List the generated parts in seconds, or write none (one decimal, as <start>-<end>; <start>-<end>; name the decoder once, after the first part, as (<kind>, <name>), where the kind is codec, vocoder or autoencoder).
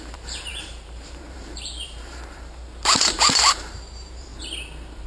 0.0-4.3 (vocoder, BigVGAN v2)